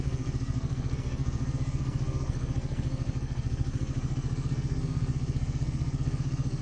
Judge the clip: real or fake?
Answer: fake